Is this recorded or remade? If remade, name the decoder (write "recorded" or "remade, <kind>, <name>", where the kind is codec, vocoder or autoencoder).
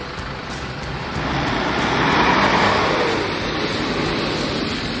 recorded